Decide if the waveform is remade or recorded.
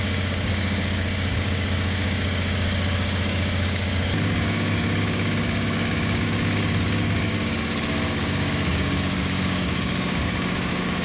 remade